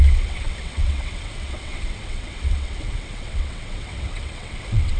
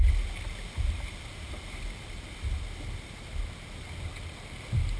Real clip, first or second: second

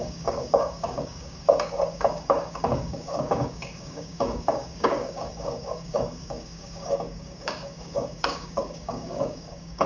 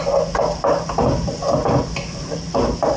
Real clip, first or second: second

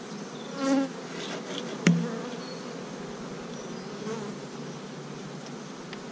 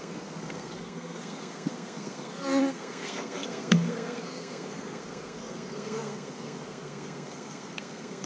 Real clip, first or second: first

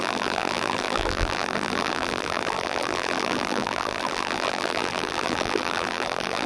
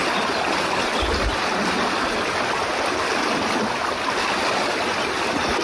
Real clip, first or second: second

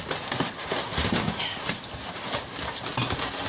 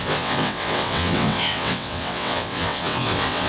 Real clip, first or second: first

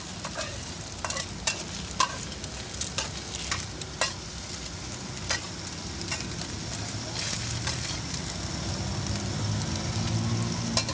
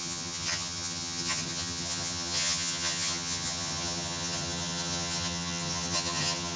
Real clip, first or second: first